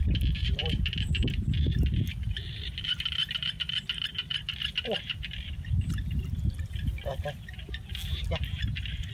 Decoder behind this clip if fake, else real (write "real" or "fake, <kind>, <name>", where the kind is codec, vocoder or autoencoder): fake, vocoder, BigVGAN v2